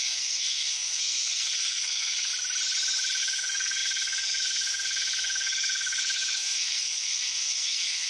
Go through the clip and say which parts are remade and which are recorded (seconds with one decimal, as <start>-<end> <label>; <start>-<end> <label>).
0.0-2.3 remade; 2.3-3.2 recorded; 3.2-8.1 remade